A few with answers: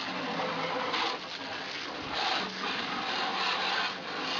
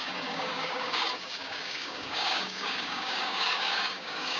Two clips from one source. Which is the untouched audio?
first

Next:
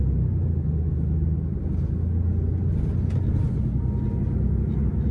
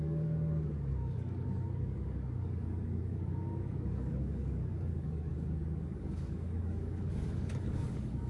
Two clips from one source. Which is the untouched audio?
first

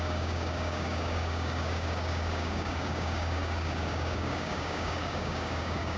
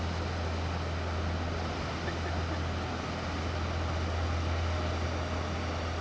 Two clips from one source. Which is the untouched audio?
second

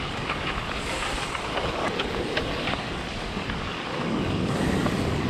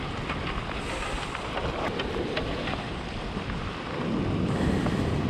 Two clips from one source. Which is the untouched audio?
second